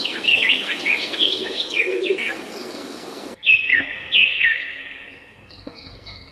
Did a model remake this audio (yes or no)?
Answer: yes